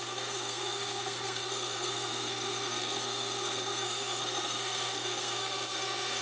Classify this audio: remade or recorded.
remade